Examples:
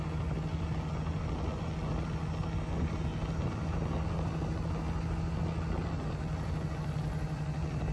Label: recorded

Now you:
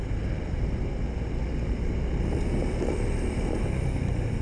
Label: recorded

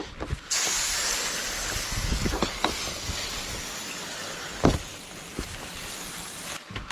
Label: recorded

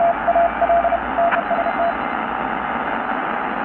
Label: recorded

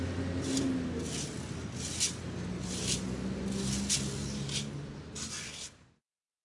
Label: recorded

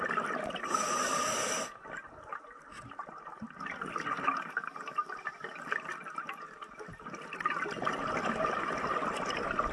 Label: recorded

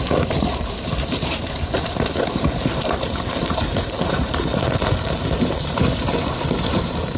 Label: remade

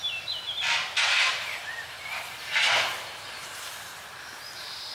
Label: remade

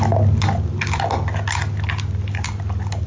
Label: recorded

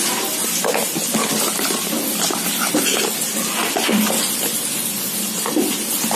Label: recorded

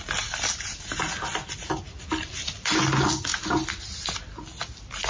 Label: recorded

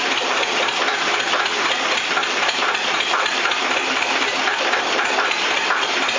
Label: remade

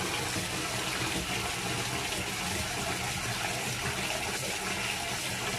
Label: recorded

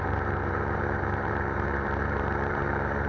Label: remade